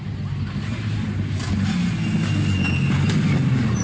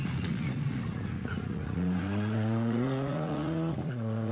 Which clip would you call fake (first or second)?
second